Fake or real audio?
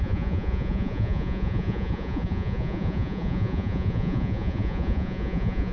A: fake